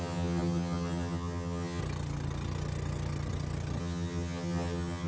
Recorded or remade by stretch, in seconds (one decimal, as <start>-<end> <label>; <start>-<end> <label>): 0.0-1.8 remade; 1.8-3.8 recorded; 3.8-5.1 remade